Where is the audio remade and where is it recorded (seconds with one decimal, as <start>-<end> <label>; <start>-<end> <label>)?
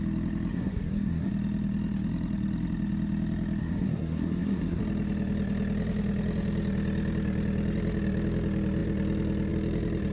0.0-0.5 recorded; 0.5-1.3 remade; 1.3-3.6 recorded; 3.6-4.8 remade; 4.8-10.1 recorded